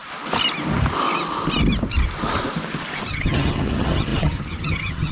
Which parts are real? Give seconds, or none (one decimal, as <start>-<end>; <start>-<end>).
0.0-3.1

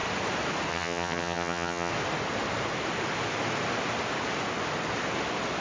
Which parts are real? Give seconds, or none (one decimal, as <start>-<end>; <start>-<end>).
0.0-0.7; 1.9-5.6